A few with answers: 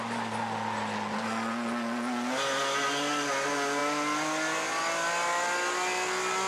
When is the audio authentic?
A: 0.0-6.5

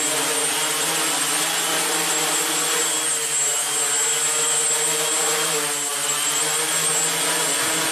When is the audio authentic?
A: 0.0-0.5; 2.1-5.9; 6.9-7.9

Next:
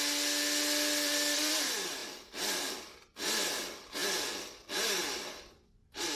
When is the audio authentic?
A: 0.0-6.2